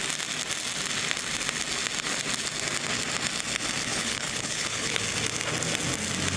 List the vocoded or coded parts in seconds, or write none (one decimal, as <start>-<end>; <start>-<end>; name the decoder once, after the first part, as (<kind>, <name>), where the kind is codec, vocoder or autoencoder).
3.9-5.0 (codec, HILCodec)